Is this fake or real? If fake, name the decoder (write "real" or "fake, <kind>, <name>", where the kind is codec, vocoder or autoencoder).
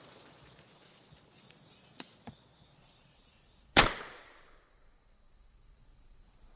fake, vocoder, Vocos